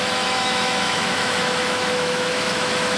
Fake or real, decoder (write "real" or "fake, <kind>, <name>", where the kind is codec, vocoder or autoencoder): fake, autoencoder, DAC-VAE